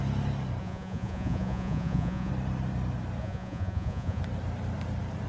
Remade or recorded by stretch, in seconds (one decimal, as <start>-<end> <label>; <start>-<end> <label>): 0.0-0.6 recorded; 0.6-2.3 remade; 2.3-3.2 recorded; 3.2-4.2 remade; 4.2-5.3 recorded